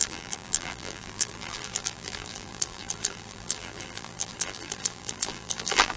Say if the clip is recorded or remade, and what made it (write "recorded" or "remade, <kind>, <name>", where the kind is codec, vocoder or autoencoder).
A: remade, vocoder, BigVGAN v2